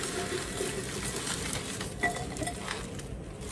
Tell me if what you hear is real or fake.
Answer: real